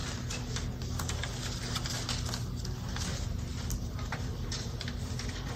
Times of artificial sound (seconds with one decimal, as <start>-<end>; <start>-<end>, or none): 3.1-5.6